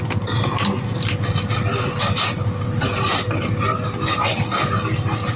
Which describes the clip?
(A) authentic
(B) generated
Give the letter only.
A